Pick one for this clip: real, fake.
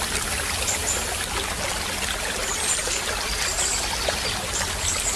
real